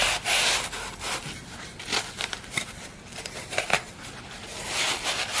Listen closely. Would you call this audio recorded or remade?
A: remade